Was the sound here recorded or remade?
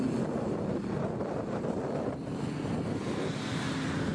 recorded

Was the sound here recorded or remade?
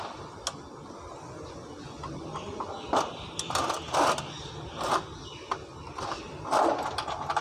recorded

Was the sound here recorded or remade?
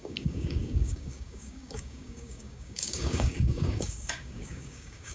remade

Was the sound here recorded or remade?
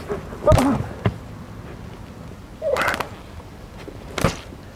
recorded